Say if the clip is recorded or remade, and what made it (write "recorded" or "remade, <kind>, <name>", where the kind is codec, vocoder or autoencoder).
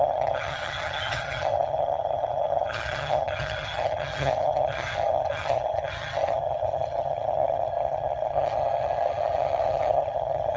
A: remade, vocoder, HiFi-GAN